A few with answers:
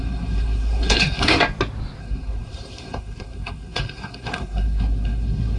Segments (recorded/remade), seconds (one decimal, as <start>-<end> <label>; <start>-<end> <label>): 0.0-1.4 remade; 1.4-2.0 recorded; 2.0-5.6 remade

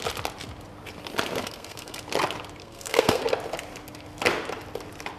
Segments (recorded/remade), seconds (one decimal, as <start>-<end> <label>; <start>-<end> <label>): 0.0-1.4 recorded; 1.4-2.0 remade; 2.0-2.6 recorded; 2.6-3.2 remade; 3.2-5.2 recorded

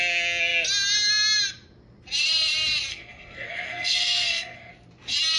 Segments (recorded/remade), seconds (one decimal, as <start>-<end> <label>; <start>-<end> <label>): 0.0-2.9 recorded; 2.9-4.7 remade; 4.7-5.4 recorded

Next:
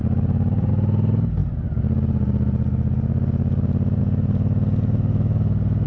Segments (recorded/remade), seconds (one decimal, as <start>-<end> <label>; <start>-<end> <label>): 0.0-0.7 remade; 0.7-5.9 recorded